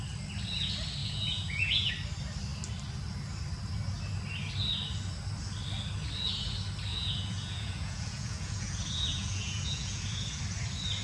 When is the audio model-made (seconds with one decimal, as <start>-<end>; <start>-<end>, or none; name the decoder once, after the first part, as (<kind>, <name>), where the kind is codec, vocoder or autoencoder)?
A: 1.0-1.9 (vocoder, Vocos); 6.9-10.4